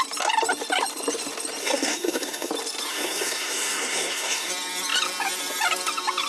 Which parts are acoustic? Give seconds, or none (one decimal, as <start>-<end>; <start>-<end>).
0.0-1.6; 2.5-2.9; 4.5-6.3